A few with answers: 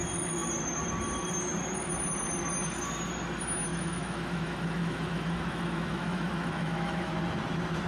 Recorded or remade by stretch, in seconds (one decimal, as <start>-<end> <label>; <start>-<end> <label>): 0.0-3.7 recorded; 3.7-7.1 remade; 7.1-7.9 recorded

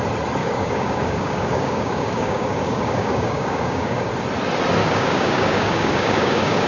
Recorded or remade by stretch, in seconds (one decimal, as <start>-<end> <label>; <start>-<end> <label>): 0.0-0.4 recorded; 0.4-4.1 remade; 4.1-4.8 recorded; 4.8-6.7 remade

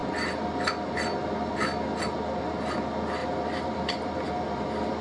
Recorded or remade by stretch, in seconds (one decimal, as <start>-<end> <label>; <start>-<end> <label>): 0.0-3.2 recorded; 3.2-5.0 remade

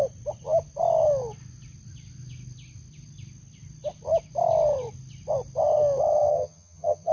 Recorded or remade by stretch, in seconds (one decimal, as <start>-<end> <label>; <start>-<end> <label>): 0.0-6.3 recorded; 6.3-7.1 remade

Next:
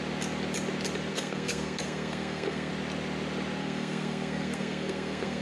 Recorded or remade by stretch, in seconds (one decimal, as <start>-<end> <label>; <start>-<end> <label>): 0.0-1.1 recorded; 1.1-2.7 remade; 2.7-3.6 recorded; 3.6-5.4 remade

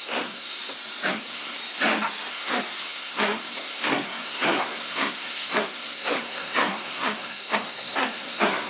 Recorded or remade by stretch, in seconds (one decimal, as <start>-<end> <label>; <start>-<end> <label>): 0.0-0.6 remade; 0.6-1.1 recorded; 1.1-1.6 remade; 1.6-2.3 recorded; 2.3-8.7 remade